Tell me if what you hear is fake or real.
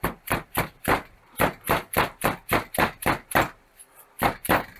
fake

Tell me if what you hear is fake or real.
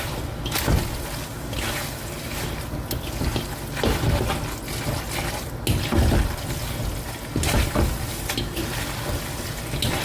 real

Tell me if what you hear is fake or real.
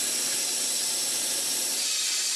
real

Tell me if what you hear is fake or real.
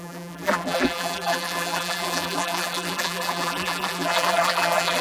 fake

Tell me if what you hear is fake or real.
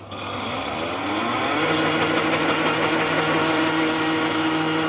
real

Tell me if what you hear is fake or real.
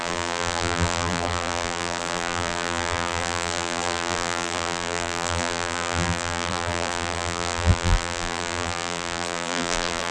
fake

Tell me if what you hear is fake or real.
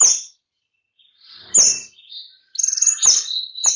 real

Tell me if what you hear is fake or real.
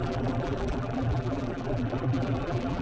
fake